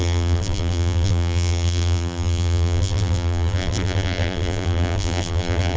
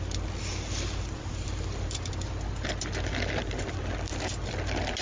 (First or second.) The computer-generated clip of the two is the first